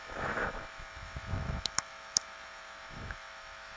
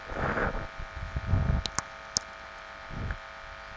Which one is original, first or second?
second